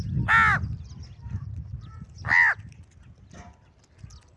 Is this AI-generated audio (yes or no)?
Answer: no